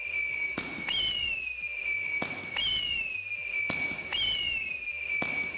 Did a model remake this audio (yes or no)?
no